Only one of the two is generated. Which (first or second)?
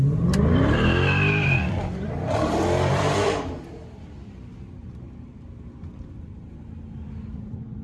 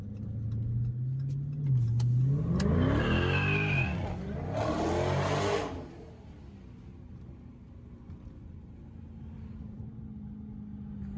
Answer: first